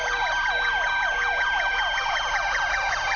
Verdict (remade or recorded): remade